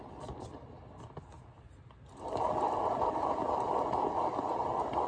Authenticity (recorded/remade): recorded